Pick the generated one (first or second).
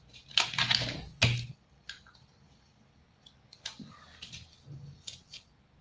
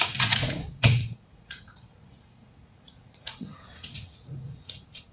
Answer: second